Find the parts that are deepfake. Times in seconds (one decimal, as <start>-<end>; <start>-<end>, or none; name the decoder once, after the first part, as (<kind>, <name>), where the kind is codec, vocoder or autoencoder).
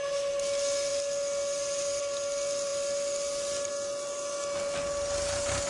none